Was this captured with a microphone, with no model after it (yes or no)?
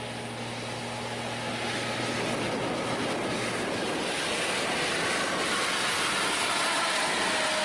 yes